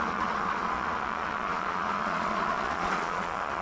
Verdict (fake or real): fake